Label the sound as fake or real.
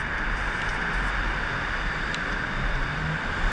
real